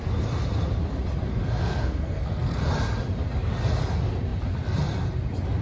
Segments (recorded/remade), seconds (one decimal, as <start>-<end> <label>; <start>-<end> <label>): 0.0-1.3 recorded; 1.3-2.6 remade; 2.6-5.6 recorded